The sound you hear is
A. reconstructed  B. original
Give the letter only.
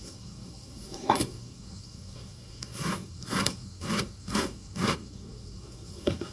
A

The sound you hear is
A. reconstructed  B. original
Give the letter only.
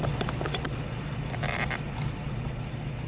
B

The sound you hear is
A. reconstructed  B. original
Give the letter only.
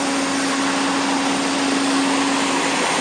B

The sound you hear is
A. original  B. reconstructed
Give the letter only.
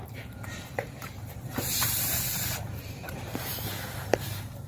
B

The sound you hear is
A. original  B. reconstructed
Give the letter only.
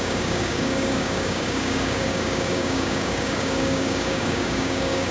B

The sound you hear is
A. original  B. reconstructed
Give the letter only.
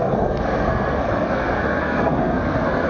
B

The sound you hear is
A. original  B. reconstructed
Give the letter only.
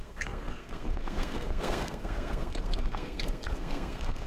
B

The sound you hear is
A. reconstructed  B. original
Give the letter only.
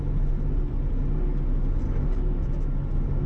B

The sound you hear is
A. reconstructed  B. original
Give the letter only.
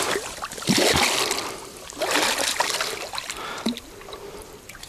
B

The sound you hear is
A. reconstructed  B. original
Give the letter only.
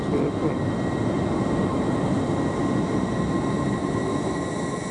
B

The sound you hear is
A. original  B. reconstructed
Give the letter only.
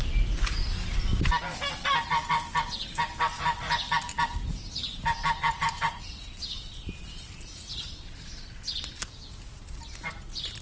A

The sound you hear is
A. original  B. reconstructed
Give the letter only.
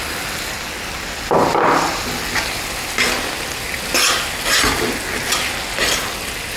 A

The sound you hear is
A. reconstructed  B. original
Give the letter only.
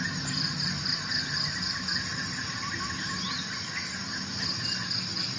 B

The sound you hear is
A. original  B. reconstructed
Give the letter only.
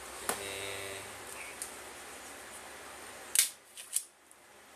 A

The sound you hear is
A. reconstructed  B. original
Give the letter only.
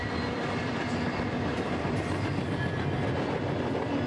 B